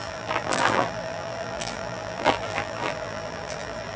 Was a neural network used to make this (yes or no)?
yes